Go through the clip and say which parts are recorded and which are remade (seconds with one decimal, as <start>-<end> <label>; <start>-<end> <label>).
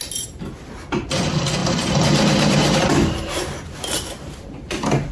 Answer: 0.0-1.6 recorded; 1.6-5.1 remade